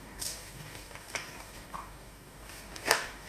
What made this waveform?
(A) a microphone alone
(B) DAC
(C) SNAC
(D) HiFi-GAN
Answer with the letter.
B